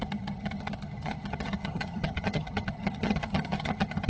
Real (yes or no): no